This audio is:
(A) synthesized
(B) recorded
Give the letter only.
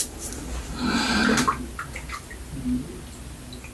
B